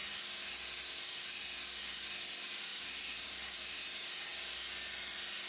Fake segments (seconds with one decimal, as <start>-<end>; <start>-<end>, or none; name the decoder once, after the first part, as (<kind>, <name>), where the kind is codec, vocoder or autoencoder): 2.7-4.3 (vocoder, BigVGAN v2)